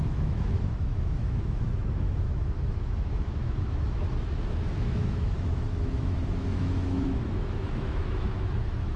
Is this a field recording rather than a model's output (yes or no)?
no